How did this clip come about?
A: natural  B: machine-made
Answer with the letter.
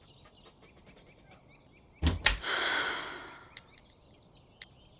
A